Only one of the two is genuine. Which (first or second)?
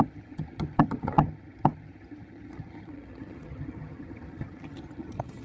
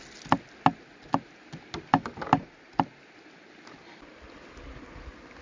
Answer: second